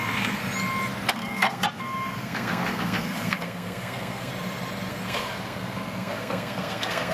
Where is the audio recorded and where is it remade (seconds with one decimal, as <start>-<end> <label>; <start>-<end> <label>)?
0.0-0.4 remade; 0.4-1.1 recorded; 1.1-4.3 remade; 4.3-4.9 recorded; 4.9-7.1 remade